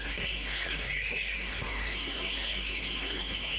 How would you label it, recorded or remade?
remade